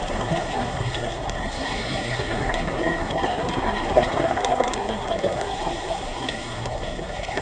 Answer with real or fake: fake